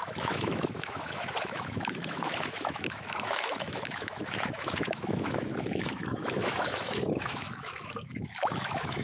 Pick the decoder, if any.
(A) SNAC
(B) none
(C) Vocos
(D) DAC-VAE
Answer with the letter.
D